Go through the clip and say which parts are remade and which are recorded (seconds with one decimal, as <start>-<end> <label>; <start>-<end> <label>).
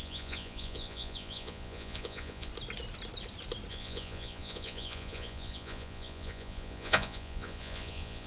0.0-2.5 remade; 2.5-3.7 recorded; 3.7-8.3 remade